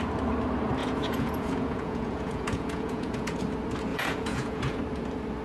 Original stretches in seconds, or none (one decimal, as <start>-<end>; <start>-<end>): 0.0-0.8; 3.4-3.9; 4.8-5.4